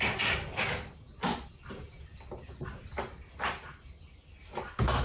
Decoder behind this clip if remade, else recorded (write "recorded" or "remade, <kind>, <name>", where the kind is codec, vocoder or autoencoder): recorded